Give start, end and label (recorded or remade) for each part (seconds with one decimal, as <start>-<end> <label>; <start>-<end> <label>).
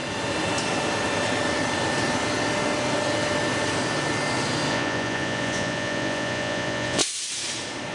0.0-4.7 recorded; 4.7-7.0 remade; 7.0-7.9 recorded